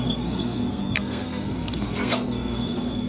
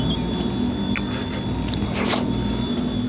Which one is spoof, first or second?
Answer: first